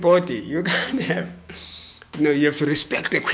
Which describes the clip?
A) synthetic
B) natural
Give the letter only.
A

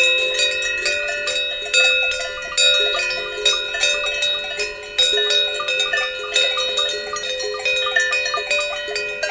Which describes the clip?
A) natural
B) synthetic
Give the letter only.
A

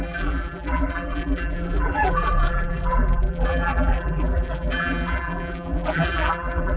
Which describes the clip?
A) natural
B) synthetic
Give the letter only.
B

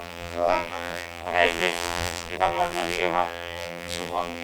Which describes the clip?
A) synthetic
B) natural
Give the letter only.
A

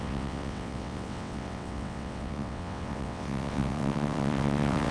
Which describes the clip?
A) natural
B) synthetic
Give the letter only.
B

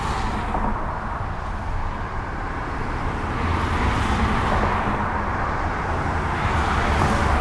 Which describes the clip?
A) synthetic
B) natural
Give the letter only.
B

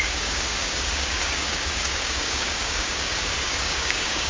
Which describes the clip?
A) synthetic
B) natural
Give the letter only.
A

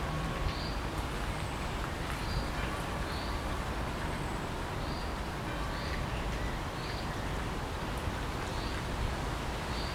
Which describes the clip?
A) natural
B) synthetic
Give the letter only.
A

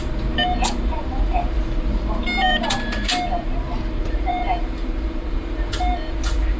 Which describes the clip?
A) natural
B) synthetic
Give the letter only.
B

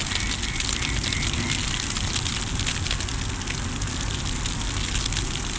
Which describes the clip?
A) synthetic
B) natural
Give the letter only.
B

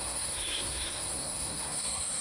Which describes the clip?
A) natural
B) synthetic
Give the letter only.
B